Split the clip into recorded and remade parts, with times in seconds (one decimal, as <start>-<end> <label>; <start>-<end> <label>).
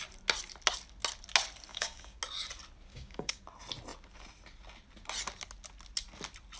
0.0-1.7 recorded; 1.7-2.2 remade; 2.2-2.9 recorded; 2.9-3.4 remade; 3.4-6.6 recorded